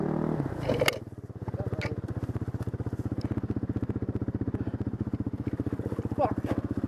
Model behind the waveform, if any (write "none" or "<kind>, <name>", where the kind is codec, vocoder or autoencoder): none